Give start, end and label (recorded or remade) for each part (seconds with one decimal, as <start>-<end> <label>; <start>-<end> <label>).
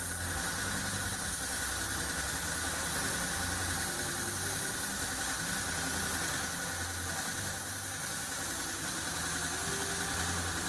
0.0-2.4 recorded; 2.4-4.7 remade; 4.7-10.7 recorded